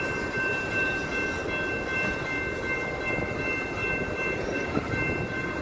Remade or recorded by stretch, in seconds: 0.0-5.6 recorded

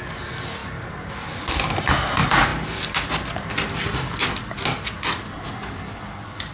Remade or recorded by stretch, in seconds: 0.0-6.5 recorded

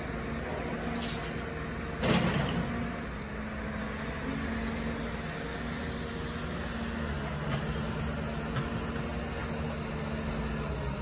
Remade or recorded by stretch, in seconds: 0.0-11.0 recorded

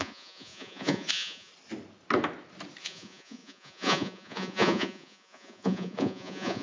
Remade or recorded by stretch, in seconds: 0.0-1.5 remade; 1.5-2.8 recorded; 2.8-6.6 remade